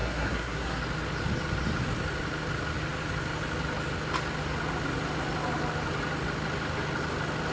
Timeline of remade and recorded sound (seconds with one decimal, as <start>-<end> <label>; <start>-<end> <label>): 0.0-0.8 remade; 0.8-7.5 recorded